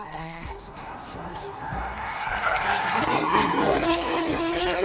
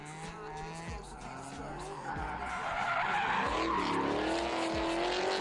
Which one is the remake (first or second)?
first